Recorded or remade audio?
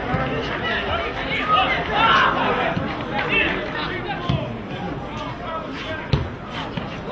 recorded